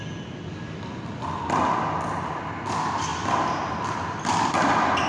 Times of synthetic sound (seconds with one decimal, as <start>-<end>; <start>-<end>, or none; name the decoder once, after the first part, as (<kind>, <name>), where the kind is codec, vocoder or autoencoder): none